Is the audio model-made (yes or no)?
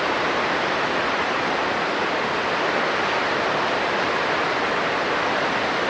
no